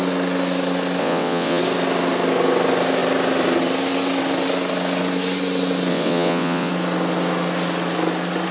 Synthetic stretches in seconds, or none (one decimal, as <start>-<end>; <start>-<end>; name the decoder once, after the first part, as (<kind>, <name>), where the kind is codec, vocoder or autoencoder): 1.0-1.6 (vocoder, WaveNeXt); 5.9-6.7